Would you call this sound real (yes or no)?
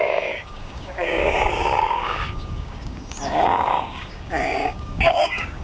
no